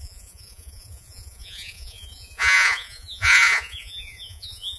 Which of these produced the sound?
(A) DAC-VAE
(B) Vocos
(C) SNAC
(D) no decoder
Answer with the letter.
B